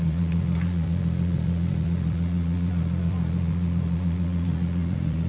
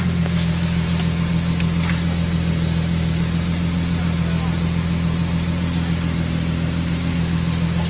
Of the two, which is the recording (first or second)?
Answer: second